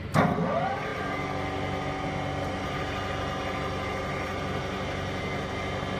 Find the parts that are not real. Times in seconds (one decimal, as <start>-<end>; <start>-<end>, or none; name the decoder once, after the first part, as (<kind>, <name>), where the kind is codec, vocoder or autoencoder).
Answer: none

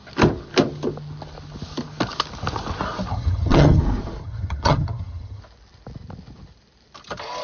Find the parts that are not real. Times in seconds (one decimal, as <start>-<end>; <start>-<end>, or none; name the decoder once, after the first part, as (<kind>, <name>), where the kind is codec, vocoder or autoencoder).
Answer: 3.1-3.8 (vocoder, HiFi-GAN); 4.2-5.4

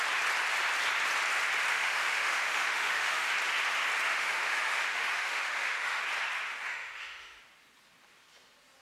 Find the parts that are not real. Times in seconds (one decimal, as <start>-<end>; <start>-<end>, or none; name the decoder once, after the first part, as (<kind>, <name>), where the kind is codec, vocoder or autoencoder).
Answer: 1.7-3.3 (autoencoder, DAC-VAE); 4.1-6.0; 6.7-7.4

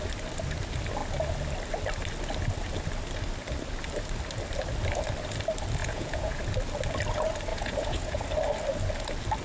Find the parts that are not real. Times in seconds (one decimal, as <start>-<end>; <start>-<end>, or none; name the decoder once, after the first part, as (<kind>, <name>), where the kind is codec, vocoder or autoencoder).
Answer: 5.8-6.4 (vocoder, Vocos); 7.5-8.2

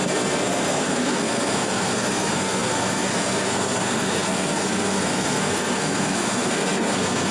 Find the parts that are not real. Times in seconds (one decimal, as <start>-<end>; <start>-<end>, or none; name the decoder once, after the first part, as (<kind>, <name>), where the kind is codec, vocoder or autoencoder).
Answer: 0.0-7.3 (codec, SNAC)

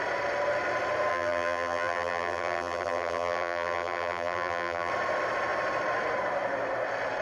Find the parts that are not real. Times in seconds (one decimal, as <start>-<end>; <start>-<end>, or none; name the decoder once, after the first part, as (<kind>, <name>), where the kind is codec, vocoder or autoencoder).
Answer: 1.1-4.9 (vocoder, BigVGAN v2)

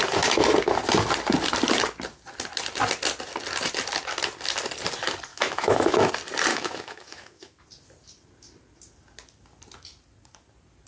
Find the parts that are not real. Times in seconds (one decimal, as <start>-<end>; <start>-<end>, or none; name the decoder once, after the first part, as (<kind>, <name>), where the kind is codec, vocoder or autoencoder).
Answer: 5.3-6.1 (autoencoder, DAC-VAE); 6.5-7.6